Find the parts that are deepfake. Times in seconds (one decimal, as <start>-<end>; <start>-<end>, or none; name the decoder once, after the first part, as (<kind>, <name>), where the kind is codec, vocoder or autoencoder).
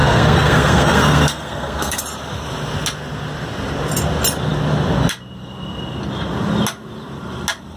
0.0-2.0 (codec, SNAC)